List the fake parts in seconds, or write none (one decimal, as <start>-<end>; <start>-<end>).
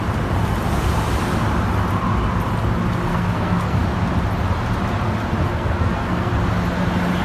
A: 3.1-3.8; 5.4-6.3